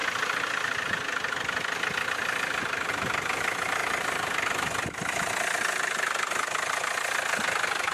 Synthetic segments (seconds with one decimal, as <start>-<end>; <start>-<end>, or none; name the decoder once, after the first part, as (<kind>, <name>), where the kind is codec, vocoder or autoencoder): none